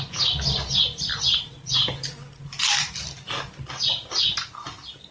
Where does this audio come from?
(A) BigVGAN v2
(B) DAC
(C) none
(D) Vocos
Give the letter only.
C